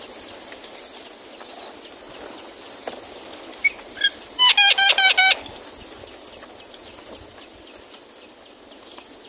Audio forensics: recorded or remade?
recorded